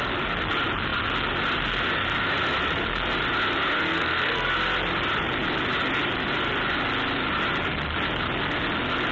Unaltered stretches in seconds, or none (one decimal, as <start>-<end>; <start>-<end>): 0.0-3.9; 4.5-9.1